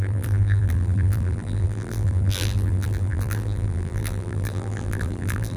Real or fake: fake